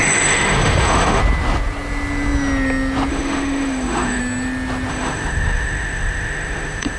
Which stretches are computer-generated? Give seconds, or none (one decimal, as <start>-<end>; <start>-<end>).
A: 0.0-1.2; 3.1-4.2; 4.9-7.0